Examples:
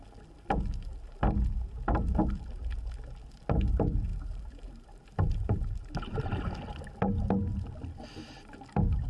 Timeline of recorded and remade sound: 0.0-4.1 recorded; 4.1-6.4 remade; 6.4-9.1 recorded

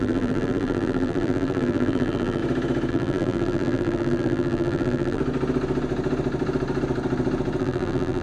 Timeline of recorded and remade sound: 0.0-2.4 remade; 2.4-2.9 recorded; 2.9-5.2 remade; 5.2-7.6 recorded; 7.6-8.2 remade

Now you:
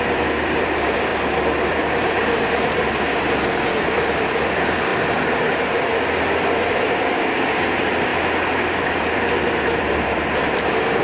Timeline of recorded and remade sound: 0.0-1.1 remade; 1.1-1.7 recorded; 1.7-8.1 remade; 8.1-8.8 recorded; 8.8-11.0 remade

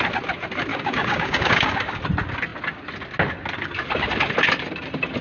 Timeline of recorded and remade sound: 0.0-0.7 recorded; 0.7-2.0 remade; 2.0-5.2 recorded

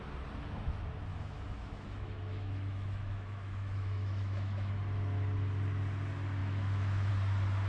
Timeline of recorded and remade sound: 0.0-1.1 recorded; 1.1-4.7 remade; 4.7-6.4 recorded; 6.4-7.1 remade; 7.1-7.7 recorded

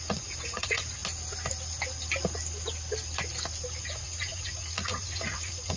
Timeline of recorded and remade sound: 0.0-1.0 remade; 1.0-3.8 recorded; 3.8-5.8 remade

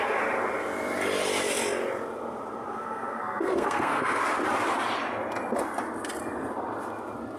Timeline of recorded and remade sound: 0.0-2.7 recorded; 2.7-4.2 remade; 4.2-7.4 recorded

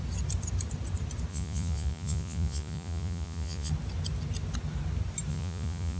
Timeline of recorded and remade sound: 0.0-1.3 recorded; 1.3-3.7 remade; 3.7-5.3 recorded; 5.3-6.0 remade